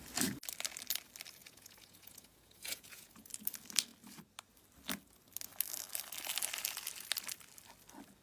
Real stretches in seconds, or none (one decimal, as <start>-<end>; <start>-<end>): 0.0-1.4; 3.3-8.2